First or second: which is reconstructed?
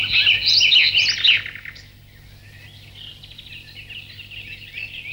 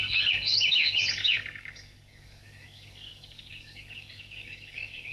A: second